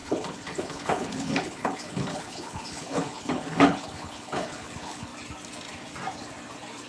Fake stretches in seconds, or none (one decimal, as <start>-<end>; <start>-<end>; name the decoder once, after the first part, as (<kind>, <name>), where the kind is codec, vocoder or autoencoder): 0.0-5.1 (codec, HILCodec)